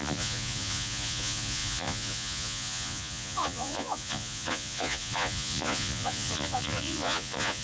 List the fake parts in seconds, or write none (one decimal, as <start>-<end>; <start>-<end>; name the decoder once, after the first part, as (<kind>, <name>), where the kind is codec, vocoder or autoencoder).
0.0-7.6 (vocoder, Vocos)